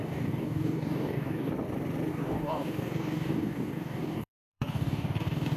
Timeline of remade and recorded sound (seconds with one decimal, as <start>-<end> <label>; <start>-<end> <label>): 0.0-1.5 remade; 1.5-2.1 recorded; 2.1-5.6 remade